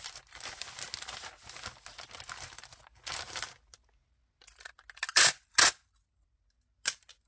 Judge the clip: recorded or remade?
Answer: recorded